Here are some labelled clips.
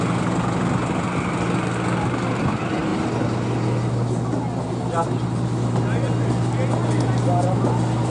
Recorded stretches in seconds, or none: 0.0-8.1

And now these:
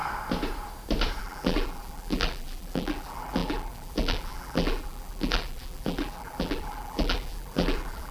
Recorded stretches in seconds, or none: 0.0-1.2

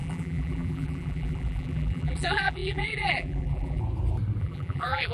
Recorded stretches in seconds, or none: 3.8-4.4

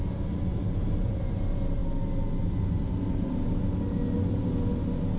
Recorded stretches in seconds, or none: 0.0-0.5; 1.4-5.2

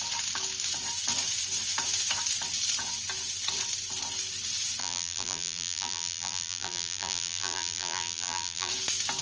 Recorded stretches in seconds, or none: 0.0-4.8; 8.7-9.2

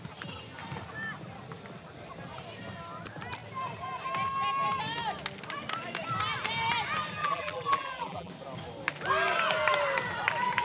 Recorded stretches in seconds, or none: 0.0-7.2; 8.3-10.6